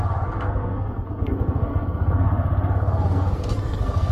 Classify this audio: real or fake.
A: fake